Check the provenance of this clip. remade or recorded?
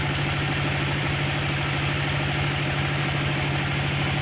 recorded